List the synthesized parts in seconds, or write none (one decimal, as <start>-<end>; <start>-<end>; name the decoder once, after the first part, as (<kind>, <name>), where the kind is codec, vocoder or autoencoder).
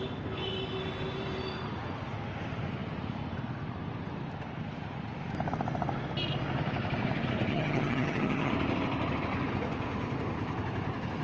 7.5-8.5 (vocoder, HiFi-GAN)